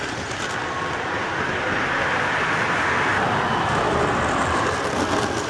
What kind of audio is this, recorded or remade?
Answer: recorded